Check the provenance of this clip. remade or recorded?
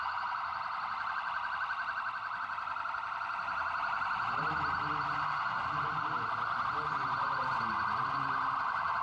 recorded